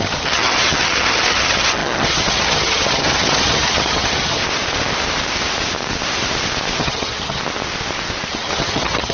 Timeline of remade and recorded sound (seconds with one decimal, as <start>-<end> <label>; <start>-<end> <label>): 0.0-4.4 remade; 4.4-6.8 recorded; 6.8-7.4 remade; 7.4-8.3 recorded; 8.3-9.1 remade